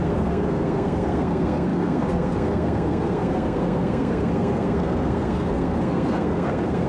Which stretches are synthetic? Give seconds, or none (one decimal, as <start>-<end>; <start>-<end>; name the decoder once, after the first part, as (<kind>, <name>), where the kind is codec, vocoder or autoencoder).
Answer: 0.0-6.9 (codec, SNAC)